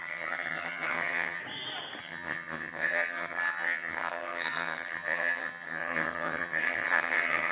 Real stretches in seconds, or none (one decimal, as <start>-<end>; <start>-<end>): 1.4-2.0